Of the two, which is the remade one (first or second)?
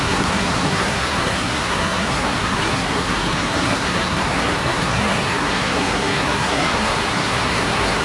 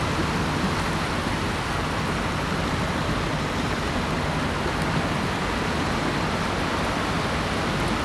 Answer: first